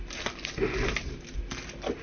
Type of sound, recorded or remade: recorded